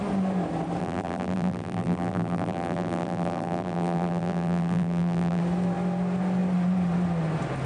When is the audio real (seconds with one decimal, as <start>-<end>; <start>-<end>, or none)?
0.0-0.8; 5.4-7.7